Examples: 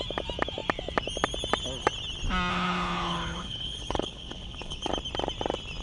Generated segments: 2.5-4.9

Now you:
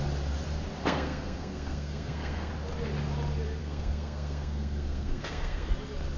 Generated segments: 0.8-2.5; 3.6-5.7

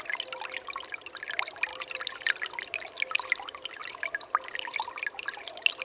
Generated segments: none

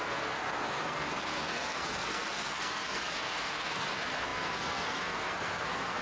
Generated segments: 0.0-6.0

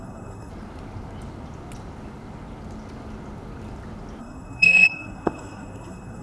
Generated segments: 0.0-0.5; 4.2-6.2

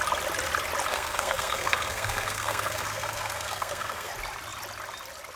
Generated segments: 0.9-4.1

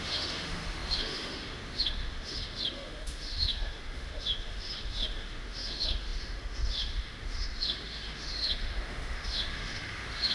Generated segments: 0.0-10.3